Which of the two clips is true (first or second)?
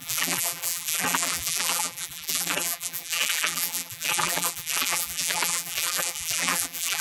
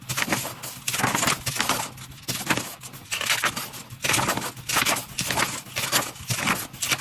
second